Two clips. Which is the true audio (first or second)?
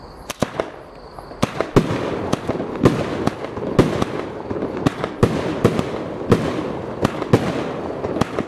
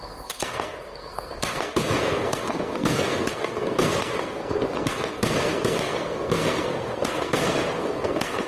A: first